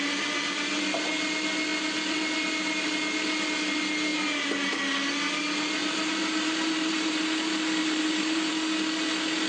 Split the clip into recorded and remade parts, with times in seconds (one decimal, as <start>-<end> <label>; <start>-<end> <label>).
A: 0.0-5.8 recorded; 5.8-7.2 remade; 7.2-7.8 recorded; 7.8-8.5 remade; 8.5-9.5 recorded